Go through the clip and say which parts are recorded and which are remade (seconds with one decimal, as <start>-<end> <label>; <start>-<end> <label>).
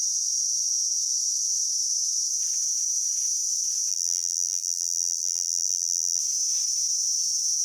0.0-3.9 recorded; 3.9-6.2 remade; 6.2-7.6 recorded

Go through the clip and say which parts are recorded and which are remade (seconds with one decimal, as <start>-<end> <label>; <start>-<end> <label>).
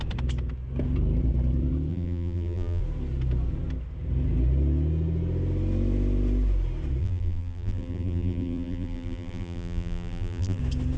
0.0-1.9 recorded; 1.9-2.8 remade; 2.8-7.0 recorded; 7.0-10.6 remade; 10.6-11.0 recorded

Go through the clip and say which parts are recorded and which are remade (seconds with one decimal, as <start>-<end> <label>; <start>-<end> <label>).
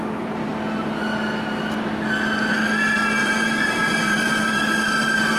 0.0-3.2 recorded; 3.2-5.4 remade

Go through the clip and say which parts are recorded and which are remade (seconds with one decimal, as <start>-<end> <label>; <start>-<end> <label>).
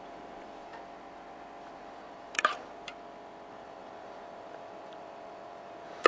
0.0-0.7 remade; 0.7-1.7 recorded; 1.7-2.9 remade; 2.9-3.5 recorded; 3.5-6.1 remade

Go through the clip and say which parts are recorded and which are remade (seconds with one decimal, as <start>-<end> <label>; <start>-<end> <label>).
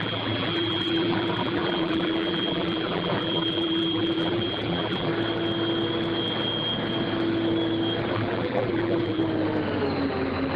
0.0-5.1 remade; 5.1-8.1 recorded; 8.1-9.2 remade; 9.2-10.6 recorded